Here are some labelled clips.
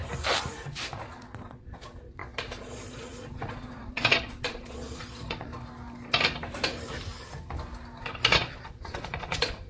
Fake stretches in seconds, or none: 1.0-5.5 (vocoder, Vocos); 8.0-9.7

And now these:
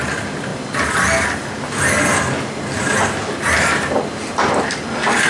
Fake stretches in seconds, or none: none